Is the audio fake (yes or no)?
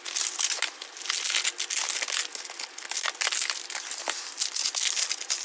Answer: no